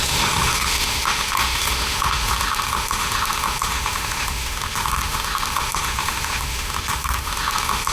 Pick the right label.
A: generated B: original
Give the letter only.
A